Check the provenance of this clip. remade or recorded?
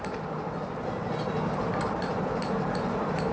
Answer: recorded